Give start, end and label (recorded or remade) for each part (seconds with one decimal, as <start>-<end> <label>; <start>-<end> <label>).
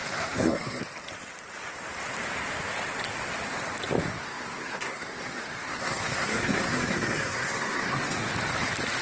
0.0-0.8 remade; 0.8-4.1 recorded; 4.1-8.3 remade; 8.3-9.0 recorded